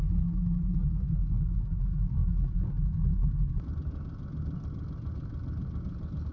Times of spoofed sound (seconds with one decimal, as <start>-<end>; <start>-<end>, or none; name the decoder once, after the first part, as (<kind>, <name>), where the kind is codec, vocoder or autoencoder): none